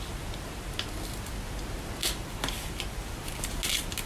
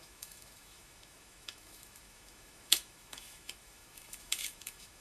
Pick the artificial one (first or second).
second